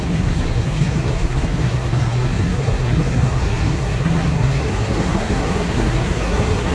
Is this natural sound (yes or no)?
no